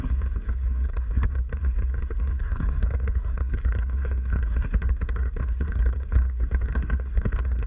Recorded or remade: remade